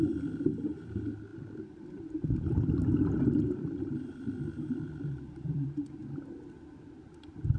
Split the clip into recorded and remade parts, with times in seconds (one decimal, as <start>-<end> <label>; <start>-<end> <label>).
0.0-1.3 remade; 1.3-3.8 recorded; 3.8-6.0 remade; 6.0-7.6 recorded